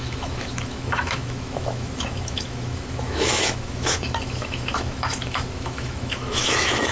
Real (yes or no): no